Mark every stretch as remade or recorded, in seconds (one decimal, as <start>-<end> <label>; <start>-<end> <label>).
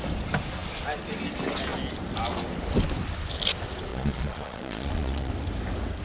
0.0-3.9 recorded; 3.9-5.3 remade; 5.3-6.0 recorded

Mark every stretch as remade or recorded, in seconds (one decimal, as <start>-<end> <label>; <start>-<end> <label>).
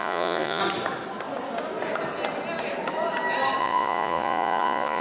0.0-0.6 remade; 0.6-3.6 recorded; 3.6-5.0 remade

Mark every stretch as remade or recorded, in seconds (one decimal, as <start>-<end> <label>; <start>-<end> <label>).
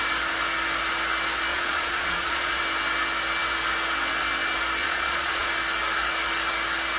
0.0-1.5 recorded; 1.5-2.6 remade; 2.6-4.8 recorded; 4.8-5.5 remade; 5.5-7.0 recorded